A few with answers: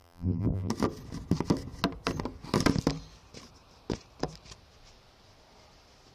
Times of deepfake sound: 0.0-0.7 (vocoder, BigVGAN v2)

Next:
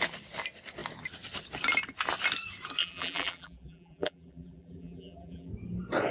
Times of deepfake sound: 2.8-5.5 (vocoder, BigVGAN v2)